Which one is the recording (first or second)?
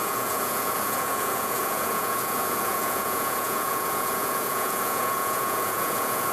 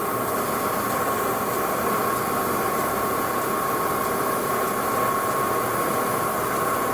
second